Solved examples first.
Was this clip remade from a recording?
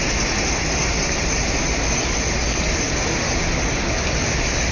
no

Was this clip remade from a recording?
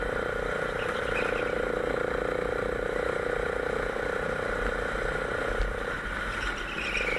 yes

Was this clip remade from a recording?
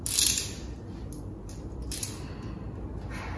no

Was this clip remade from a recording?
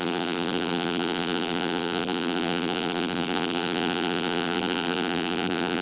yes